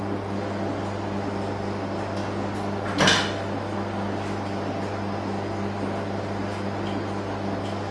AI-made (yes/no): no